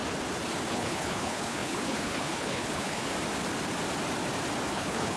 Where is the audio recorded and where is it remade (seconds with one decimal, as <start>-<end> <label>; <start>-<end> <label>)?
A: 0.0-0.7 recorded; 0.7-3.1 remade; 3.1-4.7 recorded; 4.7-5.2 remade